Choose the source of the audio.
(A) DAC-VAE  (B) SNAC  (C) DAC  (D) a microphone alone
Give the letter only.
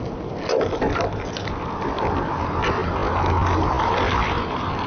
D